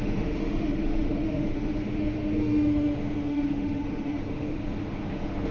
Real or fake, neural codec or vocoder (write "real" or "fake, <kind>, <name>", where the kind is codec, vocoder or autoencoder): fake, autoencoder, DAC-VAE